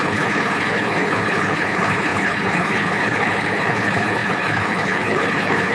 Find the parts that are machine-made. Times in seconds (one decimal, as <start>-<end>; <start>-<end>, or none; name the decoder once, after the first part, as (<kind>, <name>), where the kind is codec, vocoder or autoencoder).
0.0-5.7 (codec, HILCodec)